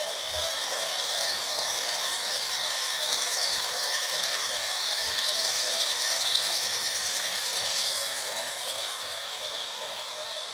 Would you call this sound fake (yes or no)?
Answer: yes